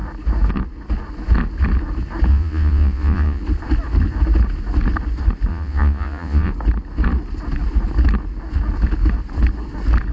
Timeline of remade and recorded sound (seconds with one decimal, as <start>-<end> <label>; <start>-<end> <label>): 0.0-2.3 recorded; 2.3-3.4 remade; 3.4-5.5 recorded; 5.5-6.5 remade; 6.5-10.1 recorded